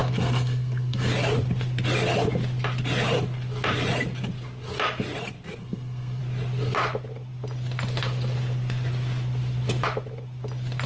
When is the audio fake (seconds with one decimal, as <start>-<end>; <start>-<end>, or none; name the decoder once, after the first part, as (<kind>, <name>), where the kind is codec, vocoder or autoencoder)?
0.0-1.1 (codec, SNAC); 5.6-6.2